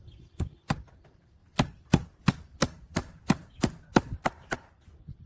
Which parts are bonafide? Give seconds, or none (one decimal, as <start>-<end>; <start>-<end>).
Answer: 0.0-5.3